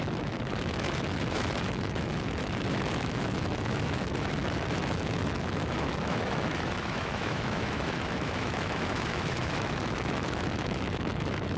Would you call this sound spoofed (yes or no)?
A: yes